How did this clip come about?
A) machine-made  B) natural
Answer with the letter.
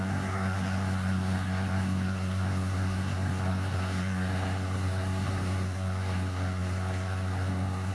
A